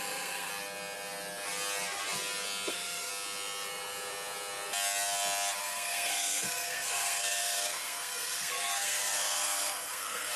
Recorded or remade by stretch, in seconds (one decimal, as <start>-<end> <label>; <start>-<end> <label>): 0.0-0.5 remade; 0.5-2.7 recorded; 2.7-3.1 remade; 3.1-5.6 recorded; 5.6-10.4 remade